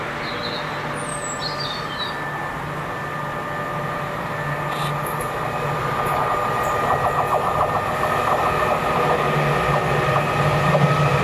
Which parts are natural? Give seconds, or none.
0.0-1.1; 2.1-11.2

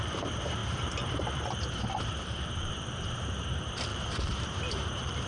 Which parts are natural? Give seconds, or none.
none

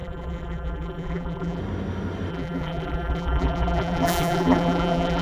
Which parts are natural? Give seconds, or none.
1.6-2.3

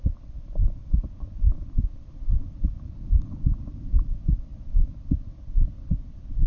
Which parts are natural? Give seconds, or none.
1.8-3.1; 4.5-5.9

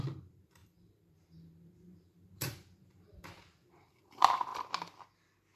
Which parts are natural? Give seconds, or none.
4.5-5.6

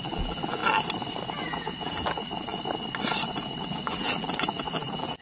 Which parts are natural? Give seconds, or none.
0.6-1.3; 2.5-3.6

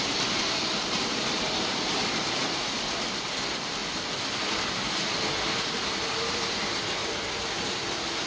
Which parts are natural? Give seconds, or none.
3.8-5.4; 7.0-7.6

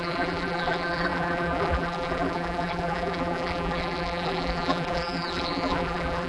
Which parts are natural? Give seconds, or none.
none